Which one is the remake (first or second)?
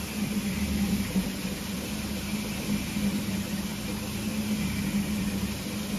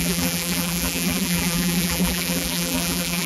second